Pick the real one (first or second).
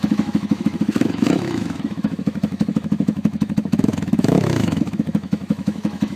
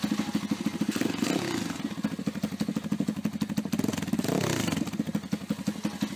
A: second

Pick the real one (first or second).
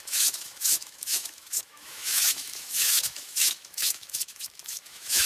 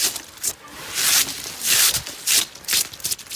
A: second